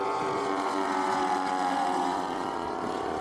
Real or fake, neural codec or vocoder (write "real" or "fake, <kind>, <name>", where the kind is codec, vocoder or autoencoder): fake, vocoder, Vocos